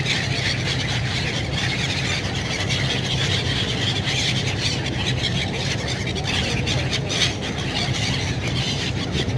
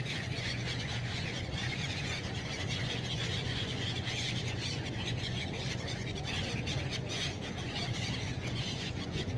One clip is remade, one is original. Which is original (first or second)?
first